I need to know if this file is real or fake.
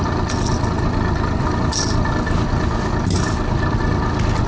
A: real